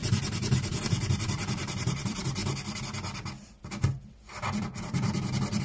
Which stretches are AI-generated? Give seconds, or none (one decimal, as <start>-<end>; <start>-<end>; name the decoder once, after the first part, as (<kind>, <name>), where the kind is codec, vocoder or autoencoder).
0.0-2.4 (vocoder, BigVGAN v2)

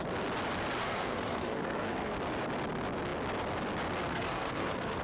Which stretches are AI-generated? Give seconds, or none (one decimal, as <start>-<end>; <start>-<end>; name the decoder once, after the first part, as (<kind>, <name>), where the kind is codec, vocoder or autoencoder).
0.8-2.2 (codec, SNAC); 4.1-5.0

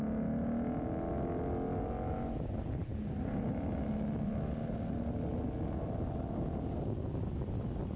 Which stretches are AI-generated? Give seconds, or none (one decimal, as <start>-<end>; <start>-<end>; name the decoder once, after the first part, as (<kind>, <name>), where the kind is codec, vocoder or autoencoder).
none

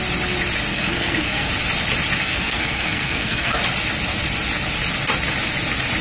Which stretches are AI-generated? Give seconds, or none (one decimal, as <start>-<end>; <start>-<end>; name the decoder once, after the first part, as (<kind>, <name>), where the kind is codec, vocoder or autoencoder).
0.7-1.5 (codec, SNAC); 2.2-3.6

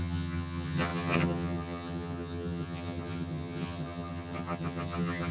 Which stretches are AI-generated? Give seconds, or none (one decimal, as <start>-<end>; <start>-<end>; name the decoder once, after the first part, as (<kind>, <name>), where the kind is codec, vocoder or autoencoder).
0.0-5.3 (vocoder, HiFi-GAN)

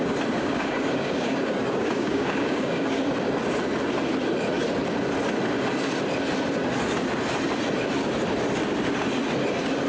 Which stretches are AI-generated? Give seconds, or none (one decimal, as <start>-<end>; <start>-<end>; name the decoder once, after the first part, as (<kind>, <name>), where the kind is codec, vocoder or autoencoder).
0.4-3.0 (codec, DAC)